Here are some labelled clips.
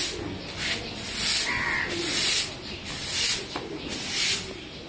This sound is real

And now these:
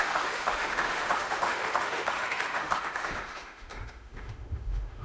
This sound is fake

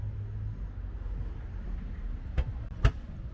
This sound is real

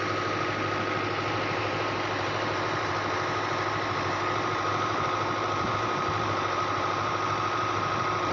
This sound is fake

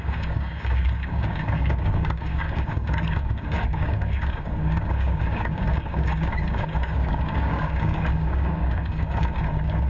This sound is fake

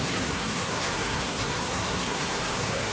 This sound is fake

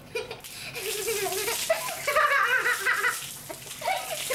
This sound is real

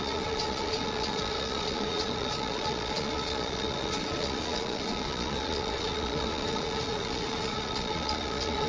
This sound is fake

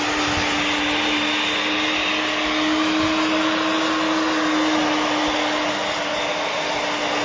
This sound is real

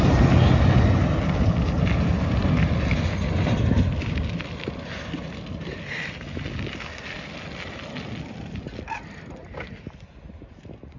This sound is real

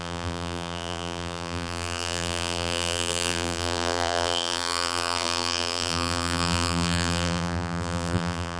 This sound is fake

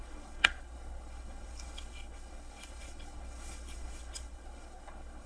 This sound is fake